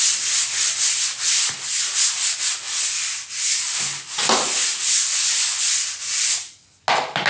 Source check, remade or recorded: recorded